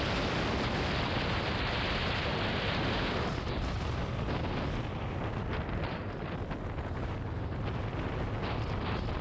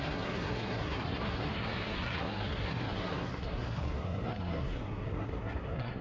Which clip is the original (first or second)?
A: first